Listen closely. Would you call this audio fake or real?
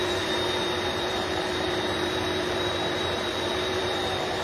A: fake